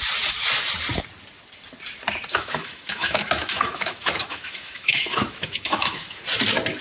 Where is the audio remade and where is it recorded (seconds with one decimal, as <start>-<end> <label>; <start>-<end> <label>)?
0.0-2.3 recorded; 2.3-6.2 remade; 6.2-6.8 recorded

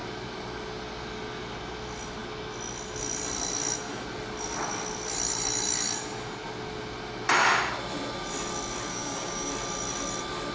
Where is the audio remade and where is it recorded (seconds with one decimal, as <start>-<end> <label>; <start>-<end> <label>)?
0.0-8.9 recorded; 8.9-9.5 remade; 9.5-10.5 recorded

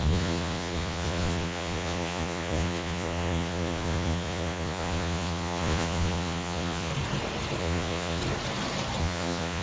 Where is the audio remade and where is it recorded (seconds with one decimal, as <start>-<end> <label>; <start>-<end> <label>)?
0.0-6.9 remade; 6.9-7.6 recorded; 7.6-8.2 remade; 8.2-9.0 recorded; 9.0-9.6 remade

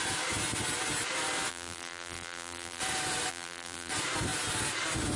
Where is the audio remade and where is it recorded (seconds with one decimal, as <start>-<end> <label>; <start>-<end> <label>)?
0.0-1.5 recorded; 1.5-2.8 remade; 2.8-3.3 recorded; 3.3-3.9 remade; 3.9-5.2 recorded

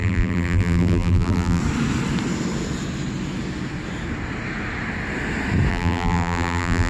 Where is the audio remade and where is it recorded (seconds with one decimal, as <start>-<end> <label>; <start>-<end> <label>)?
0.0-1.6 remade; 1.6-5.7 recorded; 5.7-6.9 remade

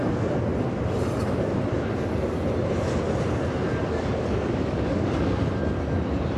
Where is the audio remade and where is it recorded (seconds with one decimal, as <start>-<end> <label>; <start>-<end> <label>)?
0.0-3.8 recorded; 3.8-5.4 remade; 5.4-6.4 recorded

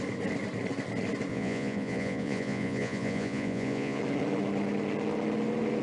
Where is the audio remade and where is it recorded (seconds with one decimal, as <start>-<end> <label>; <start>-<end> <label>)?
0.0-1.3 recorded; 1.3-4.0 remade; 4.0-5.8 recorded

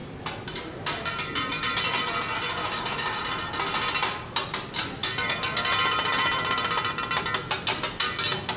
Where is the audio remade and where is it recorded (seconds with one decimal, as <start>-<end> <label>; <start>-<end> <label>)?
0.0-2.6 recorded; 2.6-3.2 remade; 3.2-8.6 recorded